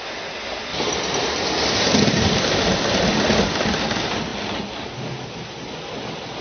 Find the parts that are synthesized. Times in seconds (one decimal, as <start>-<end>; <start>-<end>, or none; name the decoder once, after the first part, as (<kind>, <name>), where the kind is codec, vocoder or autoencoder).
none